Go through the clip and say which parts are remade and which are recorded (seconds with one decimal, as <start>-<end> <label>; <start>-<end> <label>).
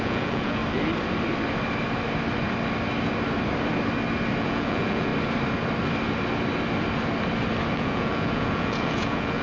0.0-0.6 remade; 0.6-4.4 recorded; 4.4-5.1 remade; 5.1-7.7 recorded; 7.7-9.4 remade